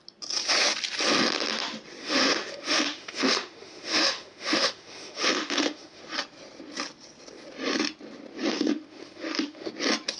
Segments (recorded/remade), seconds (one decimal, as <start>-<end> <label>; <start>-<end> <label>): 0.0-2.0 recorded; 2.0-6.0 remade; 6.0-8.5 recorded; 8.5-9.7 remade; 9.7-10.2 recorded

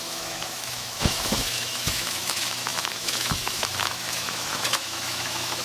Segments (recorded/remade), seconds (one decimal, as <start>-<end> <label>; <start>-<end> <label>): 0.0-5.6 remade

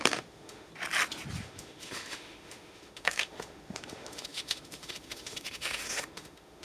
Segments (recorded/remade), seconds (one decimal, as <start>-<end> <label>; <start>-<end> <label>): 0.0-0.7 remade; 0.7-1.4 recorded; 1.4-6.6 remade

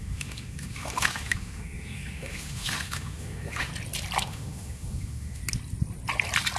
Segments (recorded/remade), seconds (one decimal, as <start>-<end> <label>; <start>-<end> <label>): 0.0-3.7 remade; 3.7-4.2 recorded; 4.2-5.4 remade; 5.4-6.6 recorded

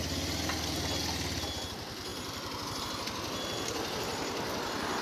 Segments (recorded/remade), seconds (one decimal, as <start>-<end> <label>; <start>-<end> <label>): 0.0-5.0 recorded

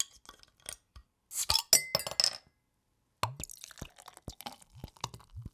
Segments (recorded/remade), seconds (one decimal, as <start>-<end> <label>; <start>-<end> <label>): 0.0-5.5 recorded